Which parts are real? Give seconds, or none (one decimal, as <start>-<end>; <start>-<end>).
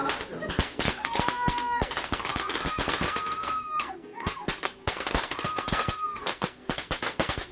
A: 0.0-0.5